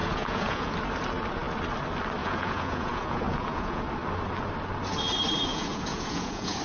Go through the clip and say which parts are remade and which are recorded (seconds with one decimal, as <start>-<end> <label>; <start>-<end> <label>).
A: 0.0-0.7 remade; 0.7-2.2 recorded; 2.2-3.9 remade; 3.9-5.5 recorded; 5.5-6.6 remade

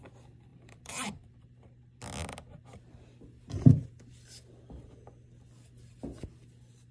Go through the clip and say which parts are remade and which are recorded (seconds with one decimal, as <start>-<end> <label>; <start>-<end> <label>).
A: 0.0-0.5 recorded; 0.5-2.0 remade; 2.0-6.9 recorded

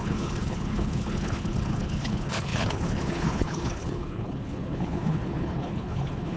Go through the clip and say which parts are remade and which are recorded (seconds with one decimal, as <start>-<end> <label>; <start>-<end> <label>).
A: 0.0-6.4 remade

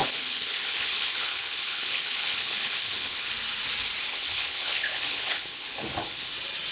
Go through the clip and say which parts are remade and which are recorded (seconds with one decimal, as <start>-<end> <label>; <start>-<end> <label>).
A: 0.0-3.3 remade; 3.3-4.1 recorded; 4.1-6.3 remade; 6.3-6.7 recorded